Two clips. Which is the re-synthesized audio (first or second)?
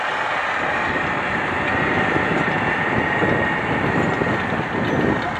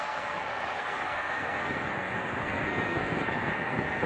second